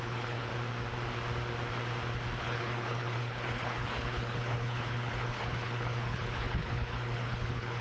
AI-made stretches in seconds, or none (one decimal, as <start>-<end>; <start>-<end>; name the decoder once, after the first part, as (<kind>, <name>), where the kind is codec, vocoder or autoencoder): 0.0-0.5 (codec, HILCodec); 2.4-7.8